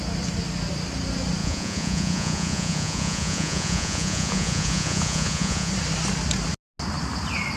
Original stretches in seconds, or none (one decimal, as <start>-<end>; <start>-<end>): 0.0-1.4; 5.7-7.6